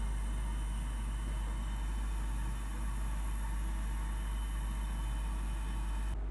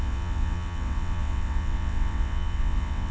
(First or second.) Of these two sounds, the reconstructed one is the second